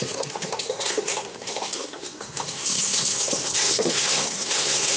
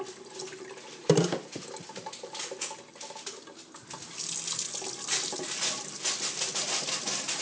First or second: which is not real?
first